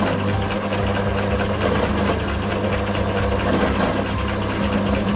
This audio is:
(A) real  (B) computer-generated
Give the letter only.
A